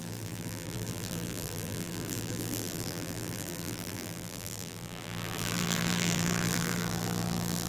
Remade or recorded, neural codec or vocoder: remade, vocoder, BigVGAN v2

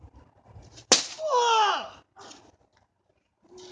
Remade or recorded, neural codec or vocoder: recorded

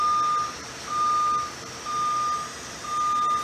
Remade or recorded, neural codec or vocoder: recorded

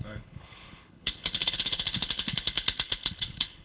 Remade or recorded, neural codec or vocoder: remade, codec, HILCodec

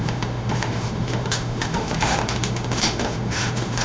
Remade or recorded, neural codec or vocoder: remade, autoencoder, DAC-VAE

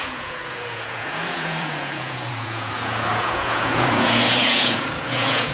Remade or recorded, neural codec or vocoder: remade, vocoder, Vocos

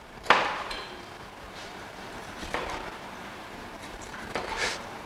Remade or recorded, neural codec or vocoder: remade, vocoder, BigVGAN v2